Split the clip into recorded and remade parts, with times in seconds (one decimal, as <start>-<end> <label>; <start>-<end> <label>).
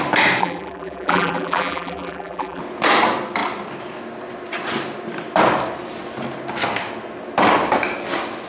0.0-0.4 recorded; 0.4-2.6 remade; 2.6-8.5 recorded